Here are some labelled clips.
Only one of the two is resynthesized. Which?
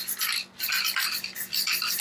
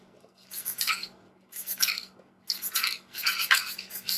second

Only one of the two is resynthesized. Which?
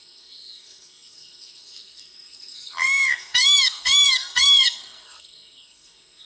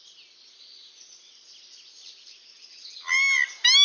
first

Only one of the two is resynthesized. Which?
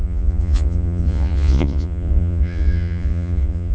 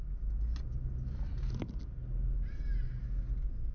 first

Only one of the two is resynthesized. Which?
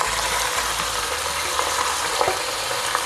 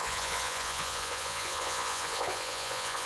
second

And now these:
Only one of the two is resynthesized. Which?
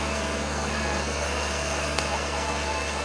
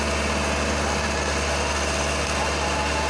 first